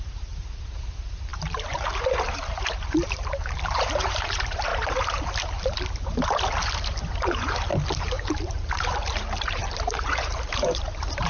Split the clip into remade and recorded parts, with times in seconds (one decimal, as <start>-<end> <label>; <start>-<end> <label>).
0.0-4.7 remade; 4.7-8.0 recorded; 8.0-11.3 remade